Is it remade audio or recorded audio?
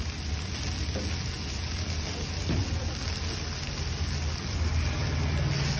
recorded